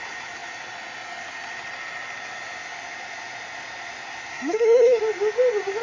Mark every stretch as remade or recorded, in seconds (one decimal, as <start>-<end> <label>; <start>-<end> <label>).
0.0-4.3 recorded; 4.3-5.0 remade; 5.0-5.8 recorded